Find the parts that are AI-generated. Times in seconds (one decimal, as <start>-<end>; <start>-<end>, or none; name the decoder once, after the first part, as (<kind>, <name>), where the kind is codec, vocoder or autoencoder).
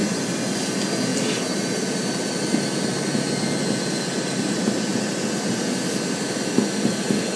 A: none